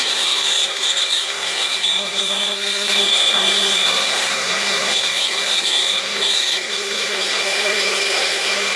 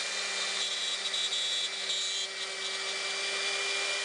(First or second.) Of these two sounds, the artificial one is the first